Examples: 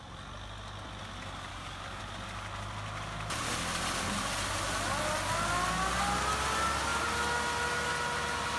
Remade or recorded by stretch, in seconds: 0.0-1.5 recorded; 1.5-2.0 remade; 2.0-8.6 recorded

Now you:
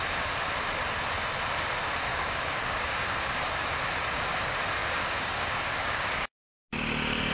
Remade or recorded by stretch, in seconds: 0.0-2.1 recorded; 2.1-3.5 remade; 3.5-4.8 recorded; 4.8-6.6 remade; 6.6-7.3 recorded

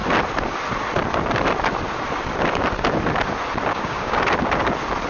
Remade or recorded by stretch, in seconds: 0.0-3.7 recorded; 3.7-4.2 remade; 4.2-5.1 recorded

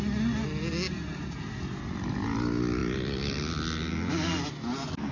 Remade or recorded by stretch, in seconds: 0.0-5.1 recorded

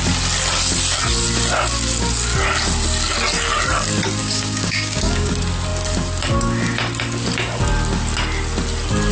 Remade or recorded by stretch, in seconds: 0.0-4.2 recorded; 4.2-5.3 remade; 5.3-9.1 recorded

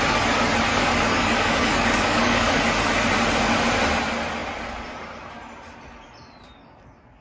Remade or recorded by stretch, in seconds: 0.0-0.7 recorded; 0.7-2.6 remade; 2.6-7.2 recorded

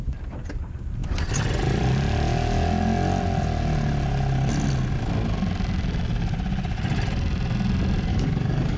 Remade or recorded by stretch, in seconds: 0.0-8.1 recorded; 8.1-8.8 remade

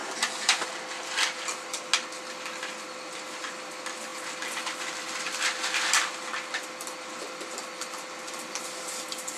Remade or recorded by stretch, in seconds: 0.0-9.4 recorded